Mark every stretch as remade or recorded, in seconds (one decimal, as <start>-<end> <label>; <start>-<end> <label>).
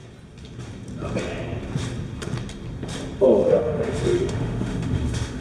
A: 0.0-3.2 recorded; 3.2-5.4 remade